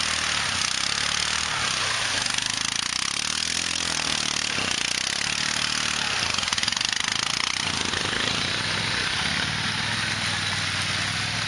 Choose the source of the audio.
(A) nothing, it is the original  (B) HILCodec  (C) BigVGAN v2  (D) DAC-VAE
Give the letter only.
A